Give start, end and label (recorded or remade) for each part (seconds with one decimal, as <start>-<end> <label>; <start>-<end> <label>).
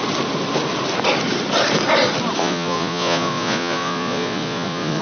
0.0-2.4 recorded; 2.4-5.0 remade